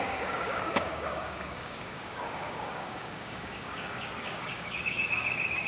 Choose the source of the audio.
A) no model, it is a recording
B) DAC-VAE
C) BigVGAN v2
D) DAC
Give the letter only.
D